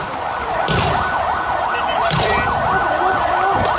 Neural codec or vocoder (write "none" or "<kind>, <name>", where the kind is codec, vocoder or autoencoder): none